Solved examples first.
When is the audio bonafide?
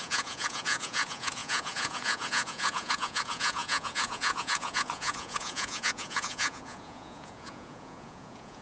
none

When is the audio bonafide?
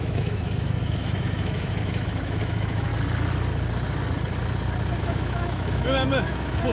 2.9-5.0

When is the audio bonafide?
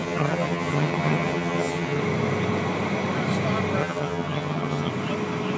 2.0-3.8; 4.9-5.6